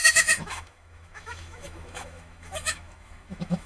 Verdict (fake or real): fake